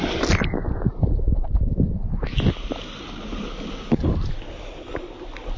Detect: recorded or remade recorded